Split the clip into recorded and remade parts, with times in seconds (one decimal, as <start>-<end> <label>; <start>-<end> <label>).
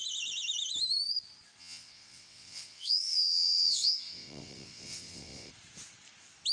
0.0-1.6 recorded; 1.6-5.5 remade; 5.5-6.5 recorded